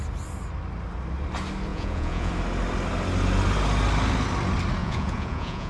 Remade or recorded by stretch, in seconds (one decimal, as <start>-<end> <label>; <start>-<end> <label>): 0.0-1.7 recorded; 1.7-2.3 remade; 2.3-4.8 recorded; 4.8-5.7 remade